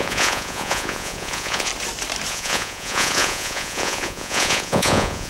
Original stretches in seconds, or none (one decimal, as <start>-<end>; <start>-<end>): 1.7-2.3